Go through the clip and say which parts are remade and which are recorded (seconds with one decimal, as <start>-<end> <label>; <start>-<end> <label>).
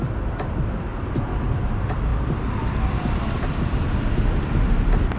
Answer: 0.0-0.9 recorded; 0.9-1.5 remade; 1.5-2.1 recorded; 2.1-5.2 remade